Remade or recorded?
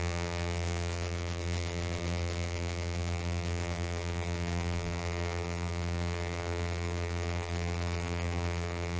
remade